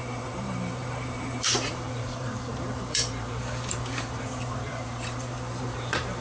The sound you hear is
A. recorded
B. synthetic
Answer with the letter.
B